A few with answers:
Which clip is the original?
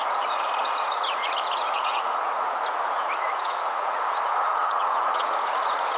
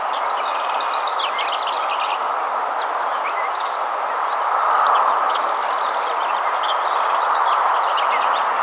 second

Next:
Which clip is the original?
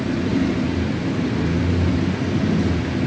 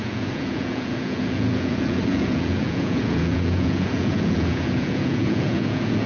first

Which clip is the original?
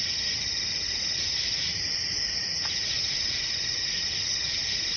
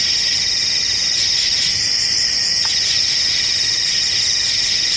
second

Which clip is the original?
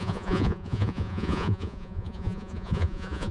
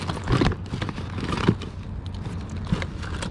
second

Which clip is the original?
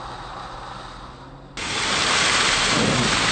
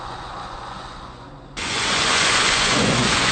first